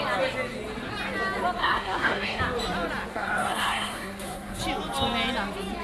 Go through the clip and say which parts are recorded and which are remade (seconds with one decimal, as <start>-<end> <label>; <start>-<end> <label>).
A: 0.0-1.6 recorded; 1.6-2.4 remade; 2.4-3.1 recorded; 3.1-4.6 remade; 4.6-5.8 recorded